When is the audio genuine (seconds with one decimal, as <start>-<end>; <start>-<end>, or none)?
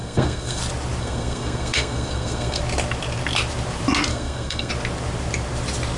0.6-1.0; 2.6-4.1; 4.7-6.0